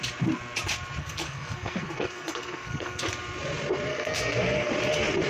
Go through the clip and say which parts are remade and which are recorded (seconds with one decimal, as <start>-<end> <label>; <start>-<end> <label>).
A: 0.0-1.0 recorded; 1.0-3.0 remade; 3.0-3.9 recorded; 3.9-4.7 remade; 4.7-5.3 recorded